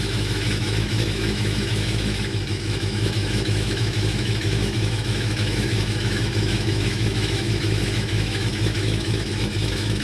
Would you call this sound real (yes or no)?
no